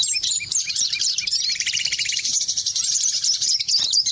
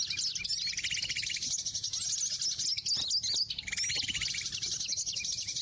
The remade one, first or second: first